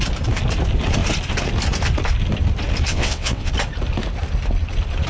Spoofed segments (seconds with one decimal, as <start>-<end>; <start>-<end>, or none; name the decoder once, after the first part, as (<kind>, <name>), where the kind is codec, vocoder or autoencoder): 2.9-3.5 (vocoder, WaveNeXt)